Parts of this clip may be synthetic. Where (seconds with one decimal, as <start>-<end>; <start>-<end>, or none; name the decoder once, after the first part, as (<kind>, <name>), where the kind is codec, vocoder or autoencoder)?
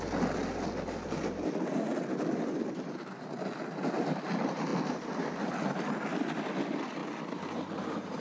none